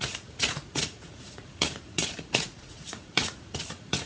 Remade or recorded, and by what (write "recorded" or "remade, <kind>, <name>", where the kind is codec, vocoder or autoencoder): remade, vocoder, Vocos